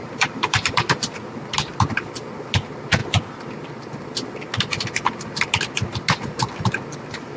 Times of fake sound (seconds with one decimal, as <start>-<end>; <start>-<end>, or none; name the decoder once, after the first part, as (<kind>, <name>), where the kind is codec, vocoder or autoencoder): 0.0-1.1 (vocoder, BigVGAN v2)